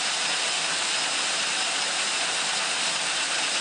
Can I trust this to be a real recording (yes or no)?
yes